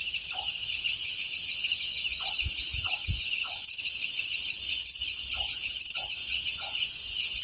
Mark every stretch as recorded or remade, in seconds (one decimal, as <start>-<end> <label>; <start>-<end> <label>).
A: 0.0-1.0 recorded; 1.0-5.4 remade; 5.4-6.2 recorded; 6.2-7.4 remade